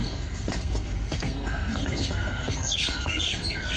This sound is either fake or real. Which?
fake